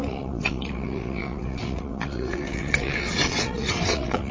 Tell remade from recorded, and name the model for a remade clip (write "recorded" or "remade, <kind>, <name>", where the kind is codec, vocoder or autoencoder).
remade, vocoder, WaveNeXt